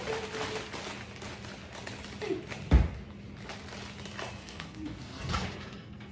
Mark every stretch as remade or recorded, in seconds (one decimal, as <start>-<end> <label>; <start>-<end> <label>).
0.0-4.4 recorded; 4.4-6.1 remade